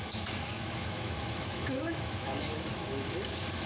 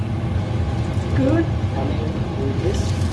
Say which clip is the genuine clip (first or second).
second